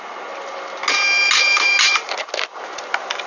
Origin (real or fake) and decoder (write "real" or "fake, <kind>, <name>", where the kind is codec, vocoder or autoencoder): real